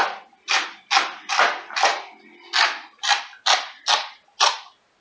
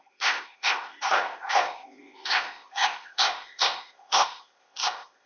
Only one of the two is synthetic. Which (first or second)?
second